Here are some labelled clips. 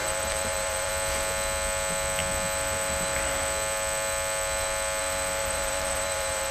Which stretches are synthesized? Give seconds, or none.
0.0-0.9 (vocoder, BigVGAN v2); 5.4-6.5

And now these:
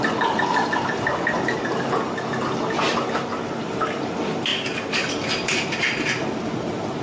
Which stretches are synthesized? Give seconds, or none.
0.0-1.1 (vocoder, BigVGAN v2); 3.6-7.0

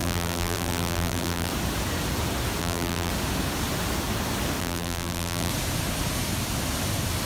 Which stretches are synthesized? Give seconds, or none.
0.0-1.5 (vocoder, BigVGAN v2); 2.6-3.1; 4.6-5.5

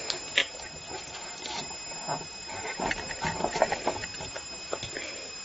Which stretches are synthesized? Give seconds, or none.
0.4-1.6 (vocoder, BigVGAN v2); 2.1-5.4

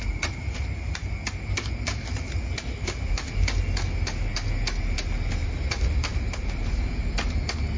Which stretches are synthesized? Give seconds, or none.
0.0-1.0 (vocoder, BigVGAN v2); 5.4-7.0

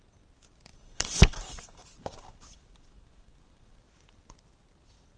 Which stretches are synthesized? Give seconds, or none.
0.7-3.8 (vocoder, BigVGAN v2)

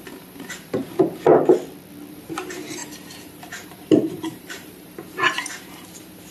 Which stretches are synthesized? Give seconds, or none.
0.0-1.3 (vocoder, BigVGAN v2); 2.1-6.3

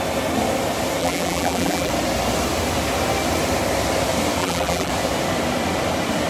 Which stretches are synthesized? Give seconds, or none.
1.0-1.9 (vocoder, BigVGAN v2); 4.4-4.9